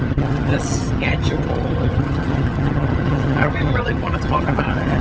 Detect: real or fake fake